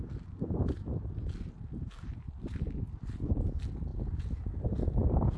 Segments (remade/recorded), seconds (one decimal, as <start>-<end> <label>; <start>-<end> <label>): 0.0-3.9 recorded; 3.9-5.0 remade; 5.0-5.4 recorded